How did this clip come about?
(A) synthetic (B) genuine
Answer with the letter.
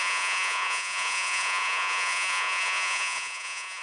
A